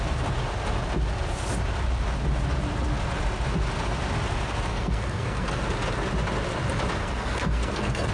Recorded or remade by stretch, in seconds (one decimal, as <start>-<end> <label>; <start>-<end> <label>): 0.0-4.7 recorded; 4.7-5.6 remade; 5.6-7.0 recorded; 7.0-8.1 remade